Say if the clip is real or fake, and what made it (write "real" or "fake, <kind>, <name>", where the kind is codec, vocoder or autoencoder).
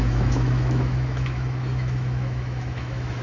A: fake, autoencoder, DAC-VAE